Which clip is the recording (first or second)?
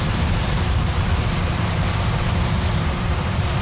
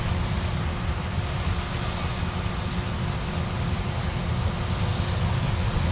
second